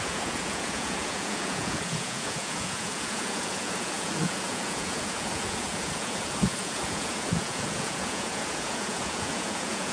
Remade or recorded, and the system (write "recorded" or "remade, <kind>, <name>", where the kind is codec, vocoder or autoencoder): remade, vocoder, Vocos